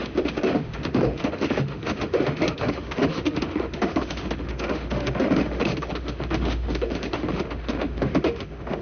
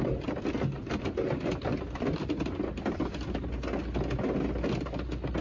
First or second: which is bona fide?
second